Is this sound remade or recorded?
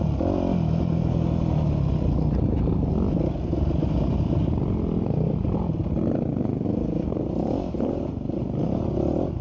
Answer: recorded